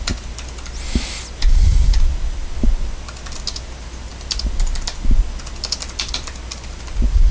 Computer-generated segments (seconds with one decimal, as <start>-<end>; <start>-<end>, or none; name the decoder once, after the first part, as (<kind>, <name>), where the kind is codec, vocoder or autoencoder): none